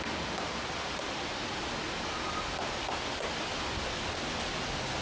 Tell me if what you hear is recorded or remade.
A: recorded